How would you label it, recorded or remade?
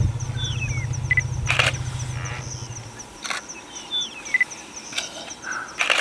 recorded